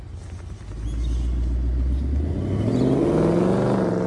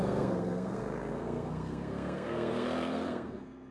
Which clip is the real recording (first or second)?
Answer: first